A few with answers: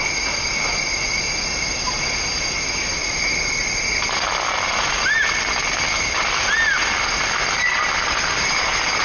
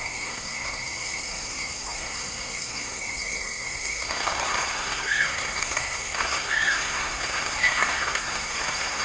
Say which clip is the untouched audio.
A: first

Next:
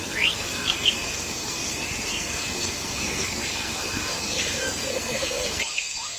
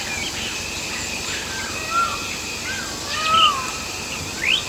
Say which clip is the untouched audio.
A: second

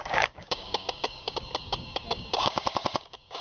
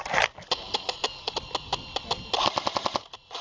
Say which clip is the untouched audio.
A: second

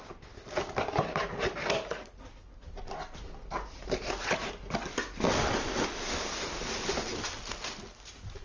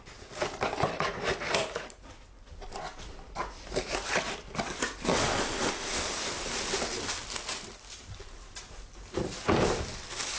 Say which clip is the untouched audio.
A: first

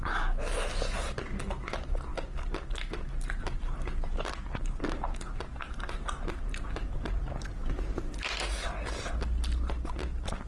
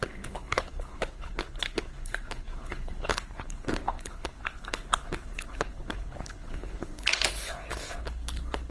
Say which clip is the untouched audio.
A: first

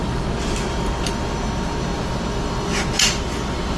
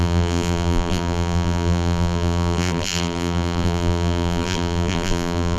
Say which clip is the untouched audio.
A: first